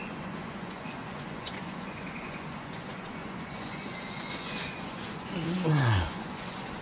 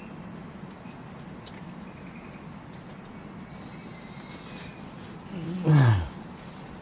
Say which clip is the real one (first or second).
second